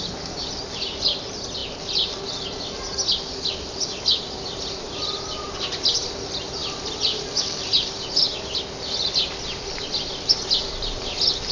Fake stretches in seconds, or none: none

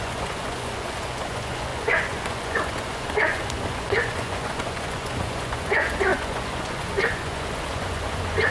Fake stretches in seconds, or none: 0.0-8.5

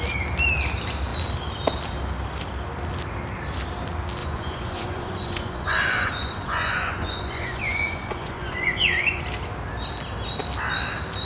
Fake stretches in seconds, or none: 4.2-9.2

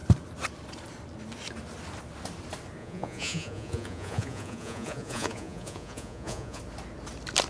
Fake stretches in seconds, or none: 2.8-6.6

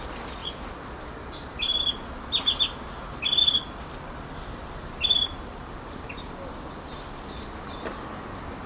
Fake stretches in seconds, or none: none

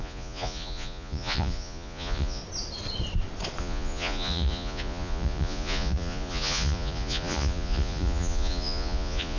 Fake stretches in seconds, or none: 0.0-2.4; 3.6-9.4